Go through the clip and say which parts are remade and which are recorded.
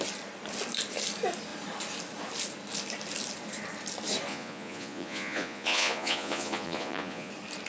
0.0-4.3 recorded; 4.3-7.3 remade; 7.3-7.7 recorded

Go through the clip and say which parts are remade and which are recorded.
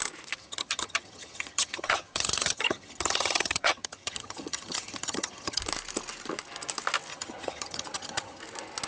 0.0-0.4 recorded; 0.4-5.6 remade; 5.6-7.1 recorded; 7.1-8.4 remade; 8.4-8.9 recorded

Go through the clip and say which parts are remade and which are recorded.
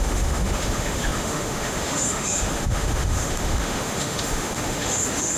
0.0-5.4 remade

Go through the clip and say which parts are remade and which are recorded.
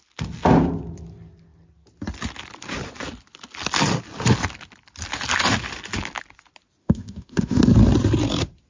0.0-6.8 recorded; 6.8-7.6 remade; 7.6-8.7 recorded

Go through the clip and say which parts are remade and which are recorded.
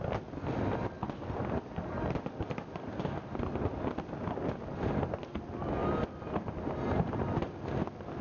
0.0-8.2 recorded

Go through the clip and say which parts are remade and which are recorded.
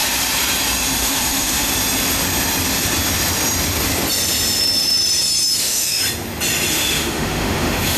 0.0-1.0 recorded; 1.0-1.7 remade; 1.7-5.6 recorded; 5.6-6.0 remade; 6.0-6.7 recorded; 6.7-8.0 remade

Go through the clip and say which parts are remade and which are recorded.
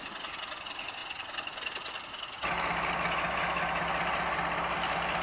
0.0-5.2 recorded